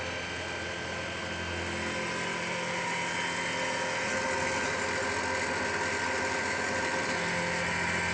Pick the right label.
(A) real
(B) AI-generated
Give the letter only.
A